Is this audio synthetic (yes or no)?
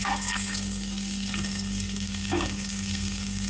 yes